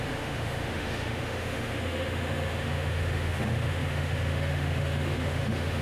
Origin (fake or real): fake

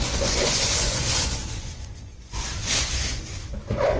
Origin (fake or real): fake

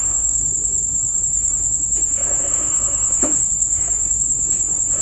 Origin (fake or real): fake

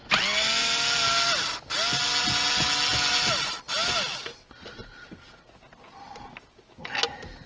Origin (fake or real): real